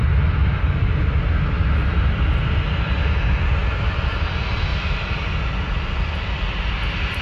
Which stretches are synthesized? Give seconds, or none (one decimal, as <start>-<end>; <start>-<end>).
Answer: none